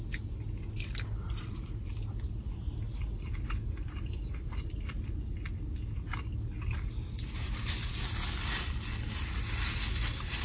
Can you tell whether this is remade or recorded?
recorded